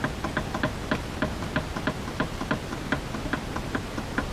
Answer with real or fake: real